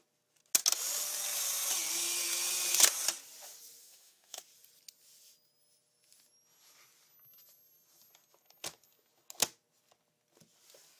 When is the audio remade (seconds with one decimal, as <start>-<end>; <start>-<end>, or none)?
3.8-4.4